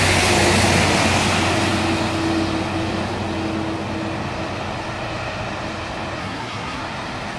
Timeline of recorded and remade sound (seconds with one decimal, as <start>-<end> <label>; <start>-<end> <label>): 0.0-6.2 recorded; 6.2-6.8 remade; 6.8-7.4 recorded